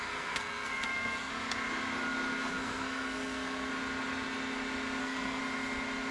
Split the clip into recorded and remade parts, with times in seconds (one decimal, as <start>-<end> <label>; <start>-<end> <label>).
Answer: 0.0-1.3 remade; 1.3-2.5 recorded; 2.5-3.7 remade; 3.7-5.0 recorded; 5.0-5.4 remade; 5.4-6.1 recorded